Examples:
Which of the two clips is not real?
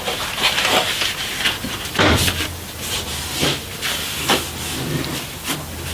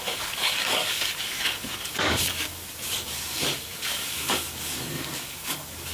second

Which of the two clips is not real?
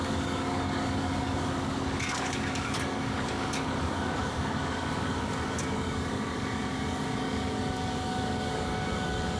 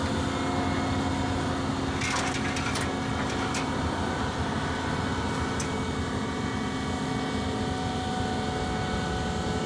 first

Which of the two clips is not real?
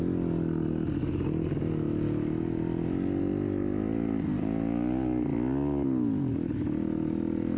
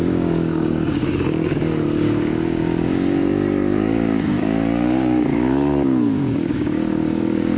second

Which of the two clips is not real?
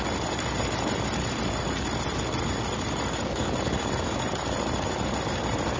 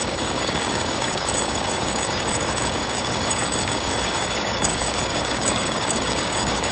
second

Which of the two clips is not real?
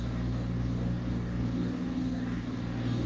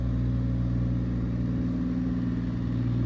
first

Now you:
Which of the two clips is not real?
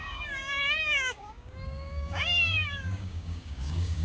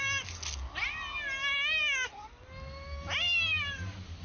first